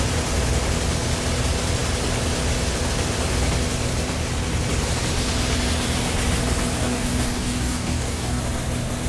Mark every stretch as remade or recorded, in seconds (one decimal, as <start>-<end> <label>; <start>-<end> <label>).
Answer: 0.0-6.8 recorded; 6.8-8.4 remade; 8.4-9.1 recorded